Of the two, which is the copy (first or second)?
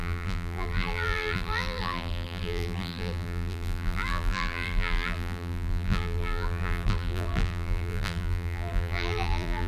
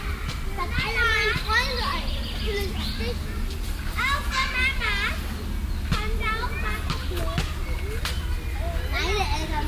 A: first